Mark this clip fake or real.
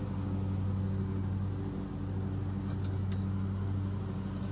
real